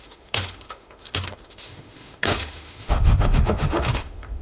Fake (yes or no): yes